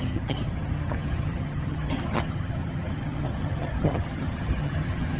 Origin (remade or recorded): remade